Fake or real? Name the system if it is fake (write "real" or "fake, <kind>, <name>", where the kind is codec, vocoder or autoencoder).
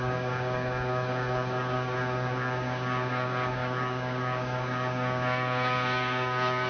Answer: fake, codec, DAC